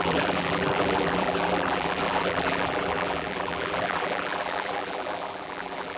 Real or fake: fake